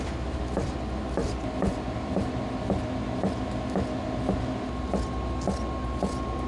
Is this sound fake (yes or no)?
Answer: no